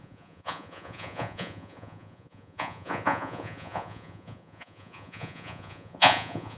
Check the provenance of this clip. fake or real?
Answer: fake